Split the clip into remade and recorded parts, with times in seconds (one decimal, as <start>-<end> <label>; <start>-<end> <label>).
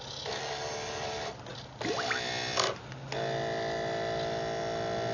0.0-5.1 recorded